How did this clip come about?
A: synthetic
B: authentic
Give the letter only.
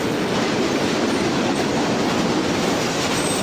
B